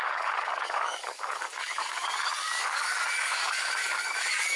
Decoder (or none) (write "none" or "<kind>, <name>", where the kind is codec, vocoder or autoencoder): codec, DAC